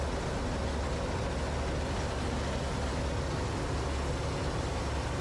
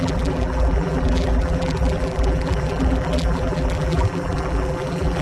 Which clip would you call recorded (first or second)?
first